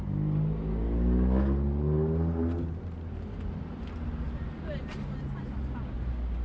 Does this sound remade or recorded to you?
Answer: recorded